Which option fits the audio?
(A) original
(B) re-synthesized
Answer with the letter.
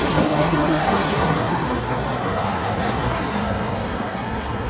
B